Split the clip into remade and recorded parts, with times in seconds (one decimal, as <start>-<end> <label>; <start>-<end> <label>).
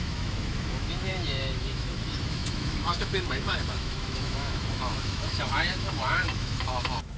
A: 0.0-7.2 remade